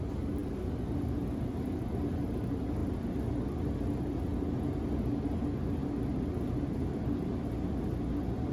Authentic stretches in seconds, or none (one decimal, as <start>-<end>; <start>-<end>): 0.0-8.5